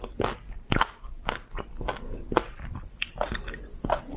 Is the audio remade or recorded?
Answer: recorded